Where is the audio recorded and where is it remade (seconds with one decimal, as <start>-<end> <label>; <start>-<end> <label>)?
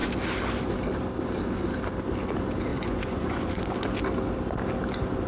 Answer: 0.0-2.7 recorded; 2.7-3.6 remade; 3.6-5.3 recorded